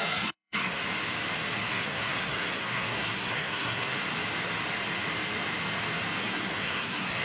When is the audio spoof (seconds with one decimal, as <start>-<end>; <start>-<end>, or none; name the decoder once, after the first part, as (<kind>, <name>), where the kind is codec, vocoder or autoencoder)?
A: 0.0-0.8 (codec, SNAC); 1.7-4.0; 6.2-7.2